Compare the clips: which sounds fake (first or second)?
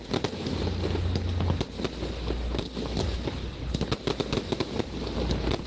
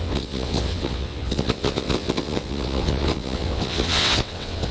second